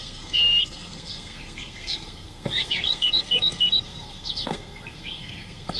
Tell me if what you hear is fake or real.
fake